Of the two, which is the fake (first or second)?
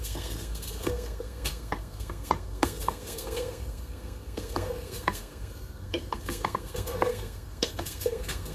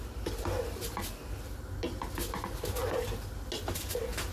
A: first